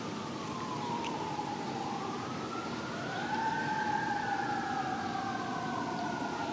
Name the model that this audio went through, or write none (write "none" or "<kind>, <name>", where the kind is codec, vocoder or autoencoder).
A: none